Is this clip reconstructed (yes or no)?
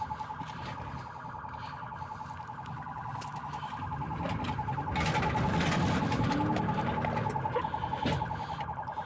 no